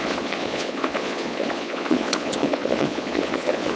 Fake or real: fake